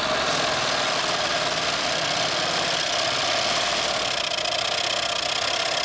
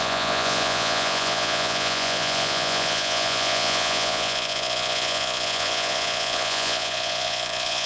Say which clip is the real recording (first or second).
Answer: first